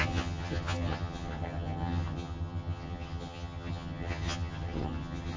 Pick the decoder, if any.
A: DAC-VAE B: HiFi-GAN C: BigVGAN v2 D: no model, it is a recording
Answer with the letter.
B